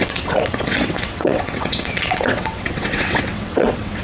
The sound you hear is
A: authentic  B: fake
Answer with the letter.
B